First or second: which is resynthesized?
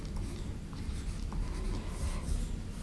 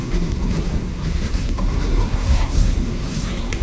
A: second